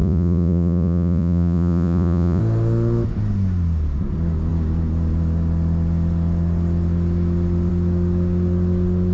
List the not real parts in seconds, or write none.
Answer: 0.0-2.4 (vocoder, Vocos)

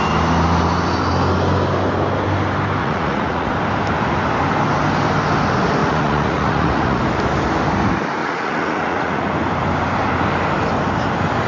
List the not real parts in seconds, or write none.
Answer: 2.8-3.5 (vocoder, Vocos); 5.8-7.0; 8.2-9.3

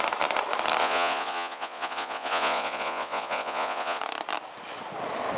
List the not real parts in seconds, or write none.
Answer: 0.8-4.0 (vocoder, Vocos)